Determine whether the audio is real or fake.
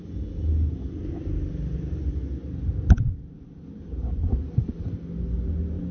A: real